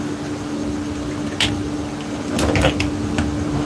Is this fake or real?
real